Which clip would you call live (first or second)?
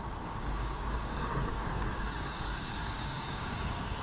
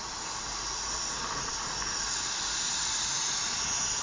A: second